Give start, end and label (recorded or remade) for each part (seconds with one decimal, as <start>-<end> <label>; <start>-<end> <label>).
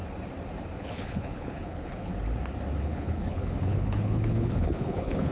0.0-0.7 recorded; 0.7-2.1 remade; 2.1-2.8 recorded; 2.8-5.3 remade